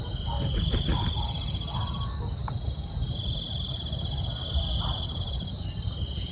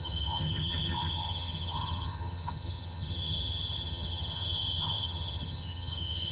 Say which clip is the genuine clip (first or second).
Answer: first